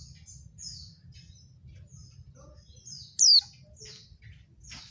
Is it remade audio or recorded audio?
recorded